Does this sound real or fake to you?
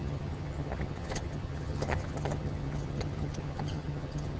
fake